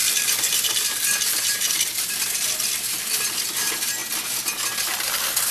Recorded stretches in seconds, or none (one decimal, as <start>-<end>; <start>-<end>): 4.0-4.6